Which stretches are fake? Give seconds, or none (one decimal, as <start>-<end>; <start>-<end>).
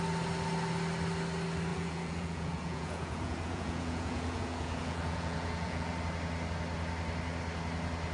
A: 1.7-5.9